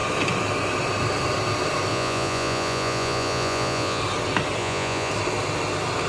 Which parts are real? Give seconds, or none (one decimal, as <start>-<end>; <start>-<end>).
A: 0.0-1.9; 4.0-4.6; 5.1-6.1